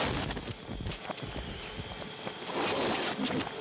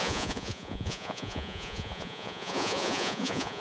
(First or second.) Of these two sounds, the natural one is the first